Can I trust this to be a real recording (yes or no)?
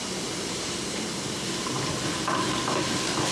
yes